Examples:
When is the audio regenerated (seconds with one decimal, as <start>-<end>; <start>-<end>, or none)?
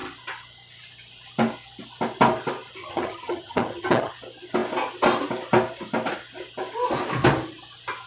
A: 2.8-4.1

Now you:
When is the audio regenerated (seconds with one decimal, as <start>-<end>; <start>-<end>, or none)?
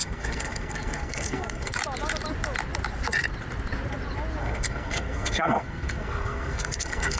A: 0.0-1.8; 4.4-7.2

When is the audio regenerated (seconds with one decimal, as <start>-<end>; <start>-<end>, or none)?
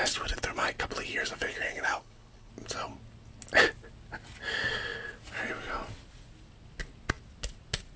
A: 1.5-2.5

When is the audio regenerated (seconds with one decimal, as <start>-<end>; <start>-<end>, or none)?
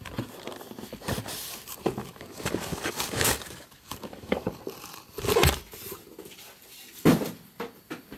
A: 2.0-4.6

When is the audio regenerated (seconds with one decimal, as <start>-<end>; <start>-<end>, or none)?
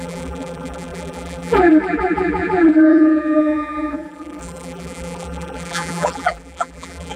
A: 0.0-7.2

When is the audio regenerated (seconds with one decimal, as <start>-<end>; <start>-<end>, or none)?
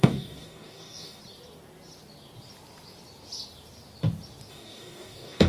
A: 0.0-1.2; 4.5-5.5